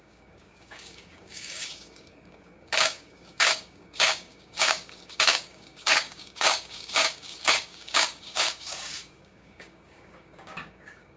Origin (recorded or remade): remade